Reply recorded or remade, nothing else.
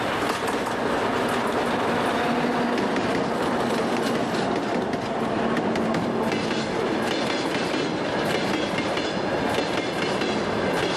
recorded